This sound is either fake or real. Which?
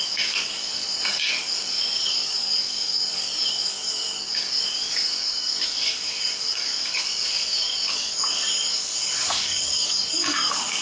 fake